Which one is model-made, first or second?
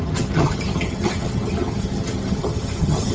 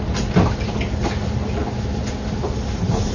first